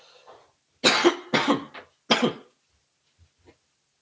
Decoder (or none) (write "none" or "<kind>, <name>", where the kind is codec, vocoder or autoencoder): none